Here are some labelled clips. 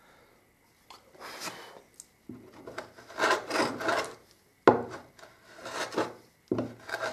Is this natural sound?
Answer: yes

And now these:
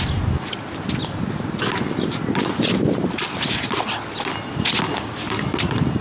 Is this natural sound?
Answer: yes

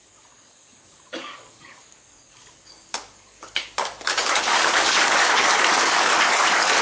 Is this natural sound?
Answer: no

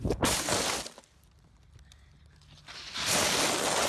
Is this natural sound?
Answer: yes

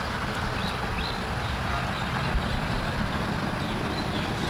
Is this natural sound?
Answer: yes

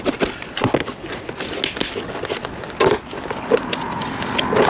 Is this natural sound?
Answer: yes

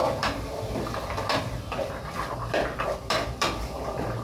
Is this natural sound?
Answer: no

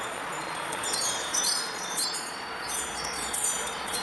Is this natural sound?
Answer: no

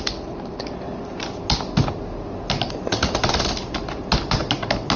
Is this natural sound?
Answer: yes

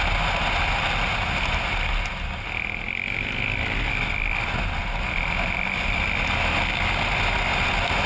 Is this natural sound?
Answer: yes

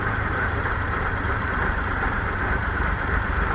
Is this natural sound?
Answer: no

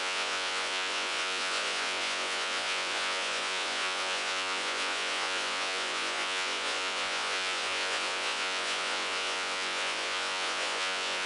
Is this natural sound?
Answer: no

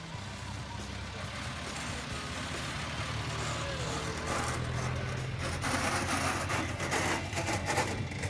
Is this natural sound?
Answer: yes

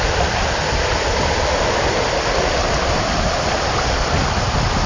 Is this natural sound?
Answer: yes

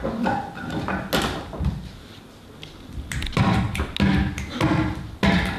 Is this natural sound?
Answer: yes